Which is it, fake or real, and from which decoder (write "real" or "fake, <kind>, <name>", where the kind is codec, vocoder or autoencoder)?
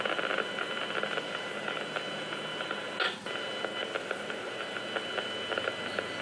real